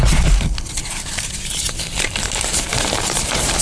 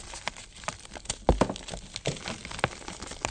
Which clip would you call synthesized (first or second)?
first